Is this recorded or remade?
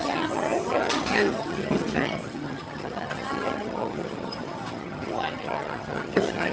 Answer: remade